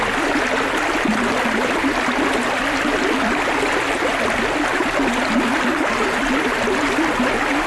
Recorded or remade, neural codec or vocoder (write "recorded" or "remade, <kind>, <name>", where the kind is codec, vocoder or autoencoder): recorded